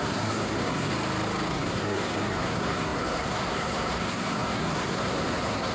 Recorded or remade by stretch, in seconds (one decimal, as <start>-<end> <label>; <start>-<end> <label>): 0.0-0.9 remade; 0.9-1.5 recorded; 1.5-5.7 remade

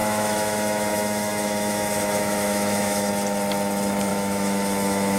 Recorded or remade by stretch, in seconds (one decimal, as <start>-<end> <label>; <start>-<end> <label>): 0.0-3.1 remade; 3.1-4.1 recorded; 4.1-5.2 remade